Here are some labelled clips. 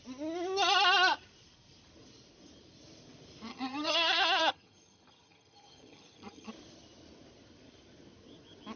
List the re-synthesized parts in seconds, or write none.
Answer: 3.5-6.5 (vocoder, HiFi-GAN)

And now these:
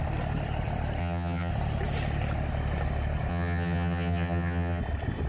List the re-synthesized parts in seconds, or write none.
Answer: 1.0-1.5 (vocoder, HiFi-GAN); 3.3-4.8

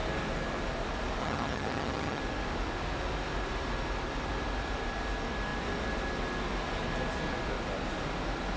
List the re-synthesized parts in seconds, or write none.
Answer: 1.2-2.2 (vocoder, HiFi-GAN)

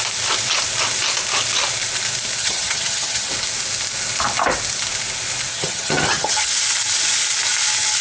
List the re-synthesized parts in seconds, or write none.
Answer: 2.4-3.3 (vocoder, HiFi-GAN); 5.5-6.5

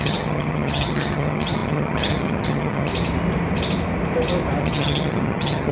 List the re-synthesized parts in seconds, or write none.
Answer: 0.0-2.9 (vocoder, HiFi-GAN); 4.6-5.7

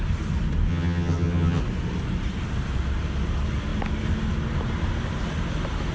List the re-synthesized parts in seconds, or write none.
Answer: 0.7-1.6 (vocoder, HiFi-GAN)

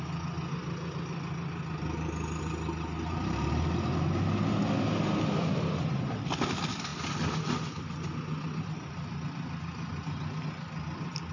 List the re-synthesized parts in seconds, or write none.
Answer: none